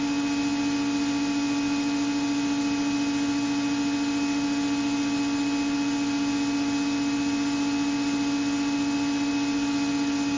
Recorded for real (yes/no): yes